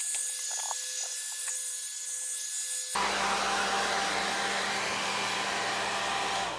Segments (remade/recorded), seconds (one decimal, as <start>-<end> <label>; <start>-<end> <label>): 0.0-1.0 recorded; 1.0-1.5 remade; 1.5-6.6 recorded